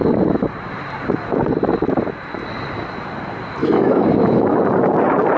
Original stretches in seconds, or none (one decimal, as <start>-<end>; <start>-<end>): 0.0-3.6; 4.6-5.4